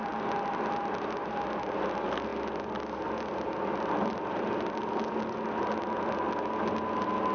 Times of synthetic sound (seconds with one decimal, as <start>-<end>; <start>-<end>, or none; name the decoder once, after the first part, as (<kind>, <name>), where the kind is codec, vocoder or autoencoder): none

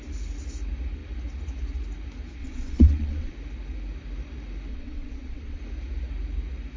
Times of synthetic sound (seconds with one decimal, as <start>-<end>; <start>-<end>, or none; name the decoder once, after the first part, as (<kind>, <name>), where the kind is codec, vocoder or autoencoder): 2.4-3.3 (vocoder, WaveNeXt); 4.7-5.6

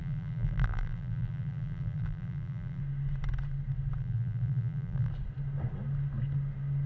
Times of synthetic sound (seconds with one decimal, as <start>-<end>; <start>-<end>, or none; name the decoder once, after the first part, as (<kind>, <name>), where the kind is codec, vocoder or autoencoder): 0.0-2.8 (vocoder, BigVGAN v2); 4.0-5.1